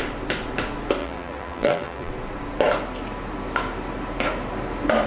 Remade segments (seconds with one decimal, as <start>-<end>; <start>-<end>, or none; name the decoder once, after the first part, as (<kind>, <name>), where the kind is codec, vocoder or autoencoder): 1.0-2.1 (vocoder, BigVGAN v2)